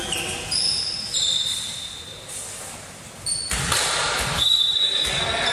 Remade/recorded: remade